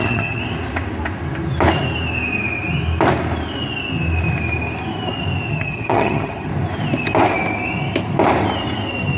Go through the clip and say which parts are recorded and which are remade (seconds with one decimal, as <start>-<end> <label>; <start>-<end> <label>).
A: 0.0-0.4 remade; 0.4-5.5 recorded; 5.5-6.5 remade; 6.5-9.2 recorded